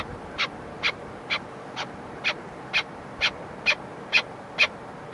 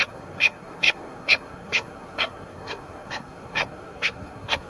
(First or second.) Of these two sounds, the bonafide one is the first